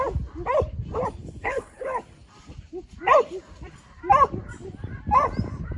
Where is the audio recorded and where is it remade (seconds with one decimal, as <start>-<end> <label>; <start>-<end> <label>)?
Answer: 0.0-1.2 recorded; 1.2-1.8 remade; 1.8-5.8 recorded